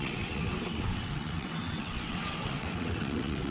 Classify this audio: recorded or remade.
remade